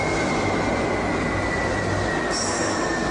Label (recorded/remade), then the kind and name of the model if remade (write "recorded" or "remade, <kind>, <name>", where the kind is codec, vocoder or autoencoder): recorded